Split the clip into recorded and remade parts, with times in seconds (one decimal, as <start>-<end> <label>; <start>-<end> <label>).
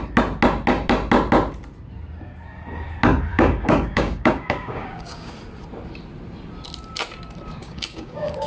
0.0-3.3 recorded; 3.3-5.3 remade; 5.3-7.6 recorded; 7.6-8.5 remade